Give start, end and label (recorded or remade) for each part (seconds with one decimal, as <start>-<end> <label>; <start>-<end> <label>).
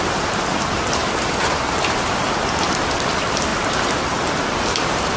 0.0-5.2 recorded